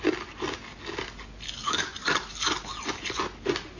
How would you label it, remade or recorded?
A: recorded